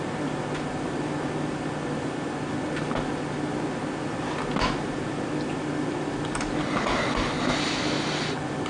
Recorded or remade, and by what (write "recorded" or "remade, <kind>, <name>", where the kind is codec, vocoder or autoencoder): recorded